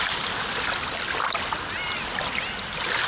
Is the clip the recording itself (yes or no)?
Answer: yes